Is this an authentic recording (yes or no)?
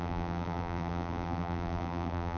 no